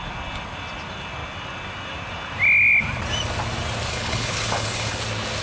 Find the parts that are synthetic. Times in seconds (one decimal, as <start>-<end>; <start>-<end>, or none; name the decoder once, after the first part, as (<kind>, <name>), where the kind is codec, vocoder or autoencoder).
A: 3.9-5.0 (codec, HILCodec)